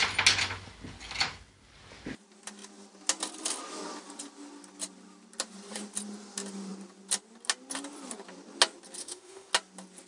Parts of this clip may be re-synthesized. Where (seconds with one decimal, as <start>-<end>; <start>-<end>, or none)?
9.0-9.5